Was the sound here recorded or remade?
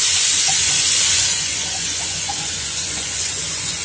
remade